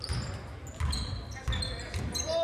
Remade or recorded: recorded